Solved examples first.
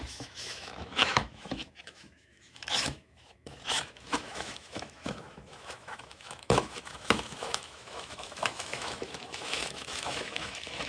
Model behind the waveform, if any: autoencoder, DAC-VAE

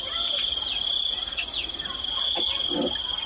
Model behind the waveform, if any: none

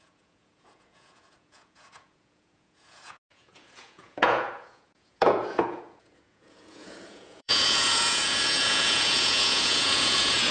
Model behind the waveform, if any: vocoder, Vocos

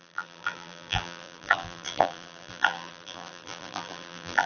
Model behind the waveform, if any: vocoder, BigVGAN v2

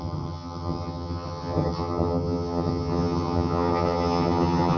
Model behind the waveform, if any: vocoder, HiFi-GAN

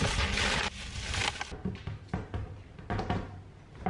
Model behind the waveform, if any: none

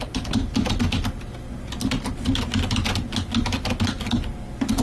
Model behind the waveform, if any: none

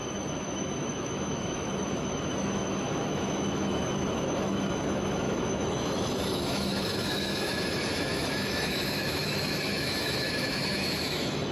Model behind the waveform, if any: autoencoder, DAC-VAE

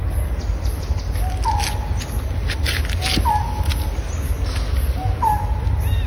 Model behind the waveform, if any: none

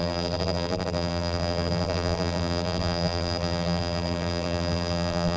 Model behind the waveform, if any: vocoder, BigVGAN v2